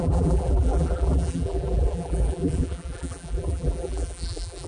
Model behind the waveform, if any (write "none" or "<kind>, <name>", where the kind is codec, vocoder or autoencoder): vocoder, BigVGAN v2